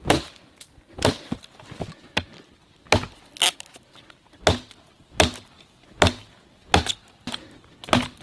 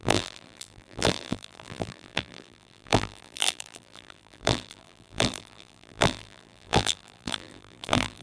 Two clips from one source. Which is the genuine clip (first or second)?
first